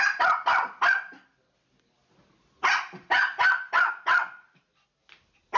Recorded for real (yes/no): yes